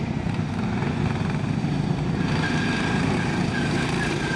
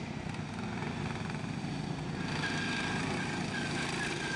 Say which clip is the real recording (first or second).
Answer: second